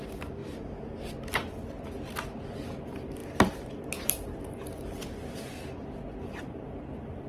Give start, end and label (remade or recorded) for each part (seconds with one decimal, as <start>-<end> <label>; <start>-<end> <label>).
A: 0.0-0.4 recorded; 0.4-1.1 remade; 1.1-3.2 recorded; 3.2-4.4 remade; 4.4-7.3 recorded